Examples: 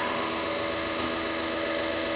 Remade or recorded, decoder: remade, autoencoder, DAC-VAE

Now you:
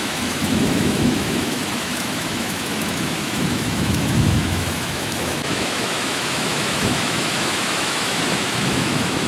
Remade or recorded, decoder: remade, autoencoder, DAC-VAE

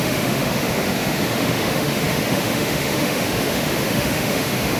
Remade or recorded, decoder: remade, autoencoder, DAC-VAE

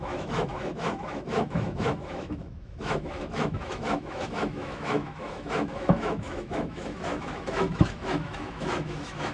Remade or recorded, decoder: remade, autoencoder, DAC-VAE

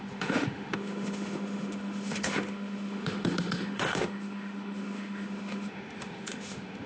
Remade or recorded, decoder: remade, autoencoder, DAC-VAE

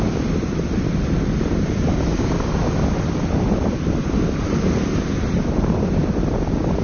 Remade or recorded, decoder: recorded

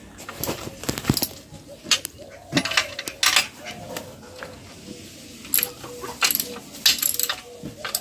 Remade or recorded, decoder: recorded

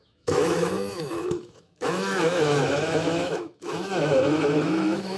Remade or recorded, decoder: remade, autoencoder, DAC-VAE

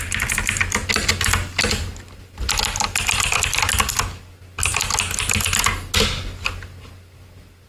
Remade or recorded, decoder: recorded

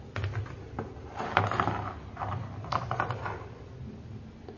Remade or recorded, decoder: recorded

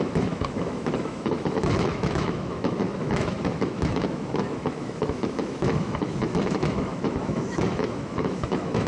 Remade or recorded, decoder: remade, autoencoder, DAC-VAE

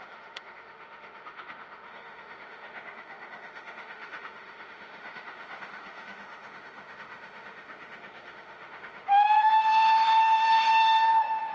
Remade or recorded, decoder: remade, autoencoder, DAC-VAE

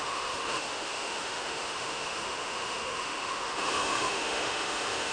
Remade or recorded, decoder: remade, autoencoder, DAC-VAE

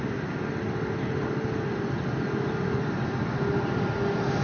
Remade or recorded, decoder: recorded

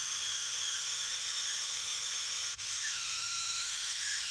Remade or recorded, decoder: remade, autoencoder, DAC-VAE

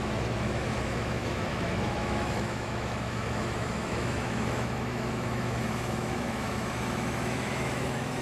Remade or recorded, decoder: remade, autoencoder, DAC-VAE